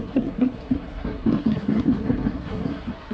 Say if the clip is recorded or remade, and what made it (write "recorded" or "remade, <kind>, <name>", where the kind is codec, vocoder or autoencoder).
remade, codec, SNAC